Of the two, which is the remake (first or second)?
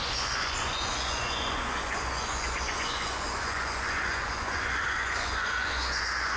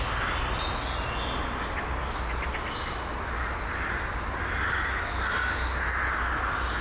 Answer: first